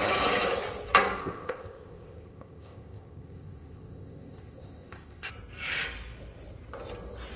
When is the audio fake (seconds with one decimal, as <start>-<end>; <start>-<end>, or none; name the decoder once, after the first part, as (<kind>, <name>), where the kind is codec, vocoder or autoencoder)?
1.2-5.3 (codec, ZipCodec)